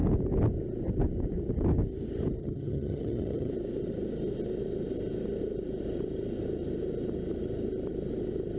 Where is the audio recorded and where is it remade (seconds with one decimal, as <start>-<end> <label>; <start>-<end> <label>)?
0.0-2.4 recorded; 2.4-3.5 remade; 3.5-8.6 recorded